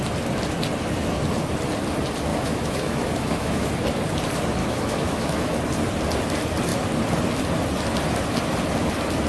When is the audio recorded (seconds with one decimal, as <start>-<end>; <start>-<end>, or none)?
0.0-2.3; 3.7-4.6; 5.5-9.3